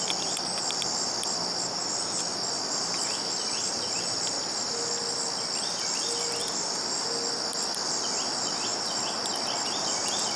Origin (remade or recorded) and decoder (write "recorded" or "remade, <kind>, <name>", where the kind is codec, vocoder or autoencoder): recorded